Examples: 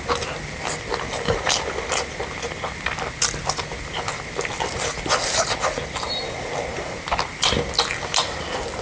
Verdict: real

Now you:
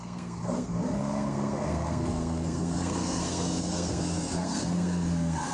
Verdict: fake